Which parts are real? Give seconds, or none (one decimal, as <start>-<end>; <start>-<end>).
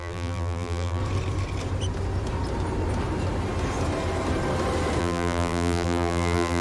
1.0-5.0